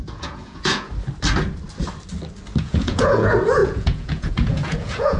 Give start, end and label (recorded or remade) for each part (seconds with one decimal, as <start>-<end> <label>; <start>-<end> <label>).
0.0-0.9 remade; 0.9-2.6 recorded; 2.6-5.2 remade